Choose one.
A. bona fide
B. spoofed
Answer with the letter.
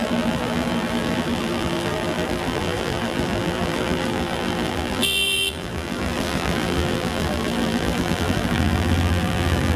B